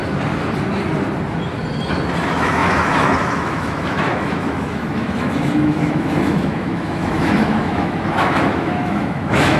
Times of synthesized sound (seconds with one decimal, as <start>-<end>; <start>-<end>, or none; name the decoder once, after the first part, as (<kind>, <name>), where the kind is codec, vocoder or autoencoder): 2.2-9.6 (autoencoder, DAC-VAE)

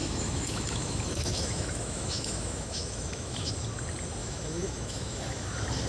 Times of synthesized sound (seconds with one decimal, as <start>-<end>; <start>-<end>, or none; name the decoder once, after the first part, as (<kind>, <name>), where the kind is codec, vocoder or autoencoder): 0.0-3.5 (autoencoder, DAC-VAE); 4.2-5.5

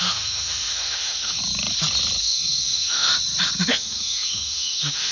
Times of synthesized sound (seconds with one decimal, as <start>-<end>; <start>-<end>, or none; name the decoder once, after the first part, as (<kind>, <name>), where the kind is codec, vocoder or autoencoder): 0.0-1.4 (autoencoder, DAC-VAE); 2.2-3.1; 3.7-5.1

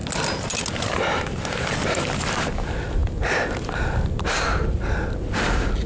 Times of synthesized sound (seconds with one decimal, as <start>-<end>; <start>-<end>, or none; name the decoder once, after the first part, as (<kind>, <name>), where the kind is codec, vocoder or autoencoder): none

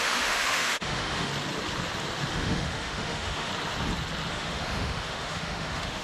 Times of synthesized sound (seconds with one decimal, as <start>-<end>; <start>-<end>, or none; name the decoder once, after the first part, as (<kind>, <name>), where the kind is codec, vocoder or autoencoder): 0.0-1.3 (autoencoder, DAC-VAE); 2.3-3.5; 4.3-6.0

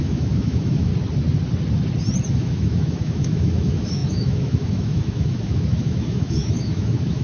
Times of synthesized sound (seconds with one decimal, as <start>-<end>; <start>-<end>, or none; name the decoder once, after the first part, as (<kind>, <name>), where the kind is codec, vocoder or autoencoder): 0.0-0.9 (autoencoder, DAC-VAE); 2.3-7.2

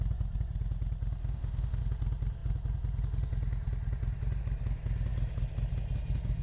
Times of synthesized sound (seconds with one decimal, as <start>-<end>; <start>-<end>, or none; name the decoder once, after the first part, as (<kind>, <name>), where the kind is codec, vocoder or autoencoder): 1.2-1.8 (autoencoder, DAC-VAE)